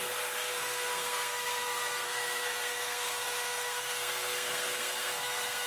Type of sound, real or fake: fake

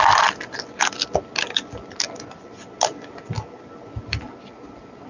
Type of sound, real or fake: real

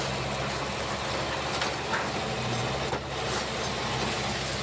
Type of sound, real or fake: real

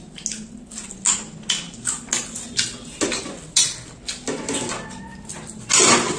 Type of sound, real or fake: real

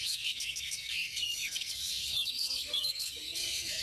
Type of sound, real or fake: fake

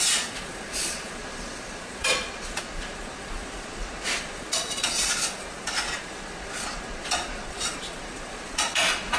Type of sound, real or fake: fake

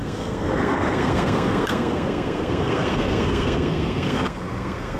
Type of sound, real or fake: fake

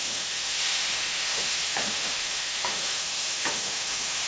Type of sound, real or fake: fake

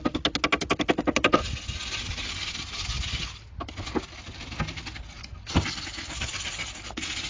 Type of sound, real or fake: real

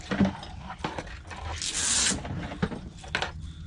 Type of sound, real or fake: real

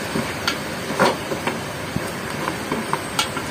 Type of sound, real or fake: fake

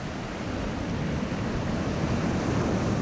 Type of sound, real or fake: real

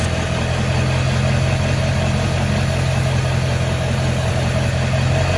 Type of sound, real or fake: real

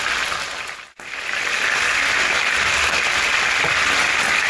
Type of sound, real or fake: real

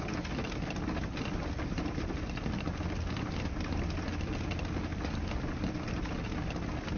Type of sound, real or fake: real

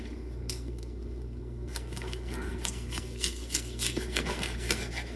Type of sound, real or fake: fake